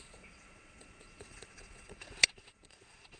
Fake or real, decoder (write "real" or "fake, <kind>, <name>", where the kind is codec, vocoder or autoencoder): fake, vocoder, Vocos